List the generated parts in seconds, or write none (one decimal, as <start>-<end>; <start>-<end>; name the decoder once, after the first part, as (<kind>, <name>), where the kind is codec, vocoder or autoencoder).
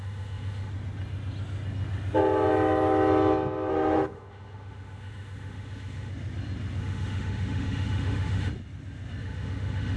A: 0.0-0.7 (autoencoder, DAC-VAE); 3.7-6.1; 6.8-8.5; 9.2-10.0